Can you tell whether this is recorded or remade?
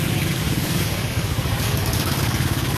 remade